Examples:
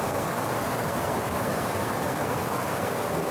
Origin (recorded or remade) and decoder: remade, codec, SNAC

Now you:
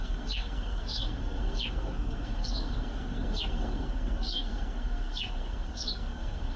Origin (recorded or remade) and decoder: remade, codec, SNAC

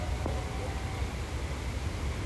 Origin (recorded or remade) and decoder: recorded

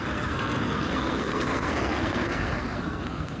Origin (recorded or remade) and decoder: remade, codec, SNAC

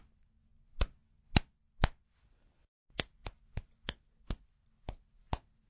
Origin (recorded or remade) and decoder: recorded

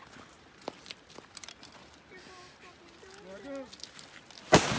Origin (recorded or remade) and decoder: recorded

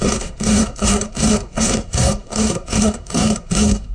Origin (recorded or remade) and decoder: remade, codec, SNAC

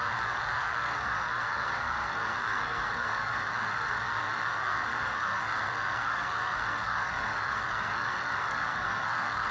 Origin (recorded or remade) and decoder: remade, codec, SNAC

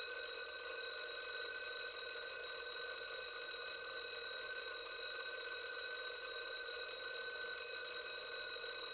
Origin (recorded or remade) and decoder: recorded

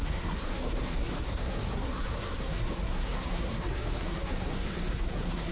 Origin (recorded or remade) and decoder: remade, codec, SNAC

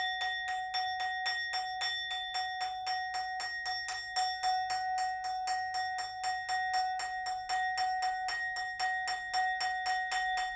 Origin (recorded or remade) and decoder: recorded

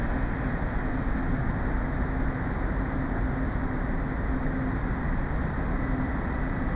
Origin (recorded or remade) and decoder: recorded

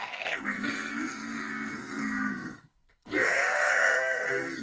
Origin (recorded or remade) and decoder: remade, codec, SNAC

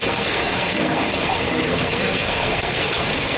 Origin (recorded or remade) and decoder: remade, codec, SNAC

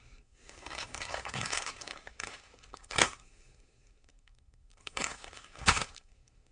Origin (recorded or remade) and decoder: remade, codec, SNAC